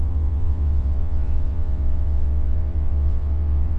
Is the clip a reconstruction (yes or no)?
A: yes